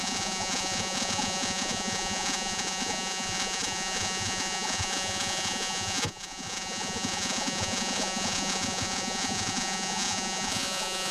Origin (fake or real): fake